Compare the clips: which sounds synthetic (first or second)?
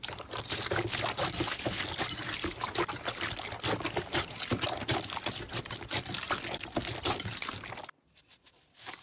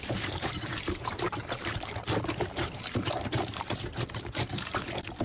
second